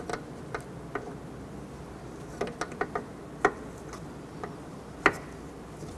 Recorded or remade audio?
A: recorded